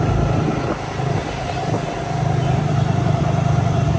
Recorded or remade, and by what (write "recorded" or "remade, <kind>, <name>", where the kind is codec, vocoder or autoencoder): recorded